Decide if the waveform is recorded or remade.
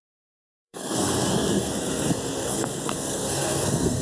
remade